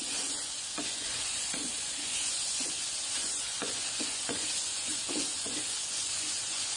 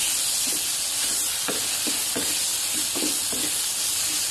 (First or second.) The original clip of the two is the second